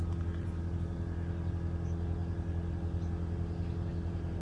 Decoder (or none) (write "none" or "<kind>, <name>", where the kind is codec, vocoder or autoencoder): none